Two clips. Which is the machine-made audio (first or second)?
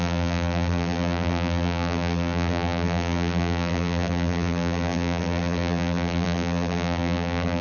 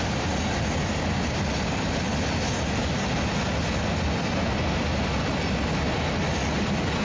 first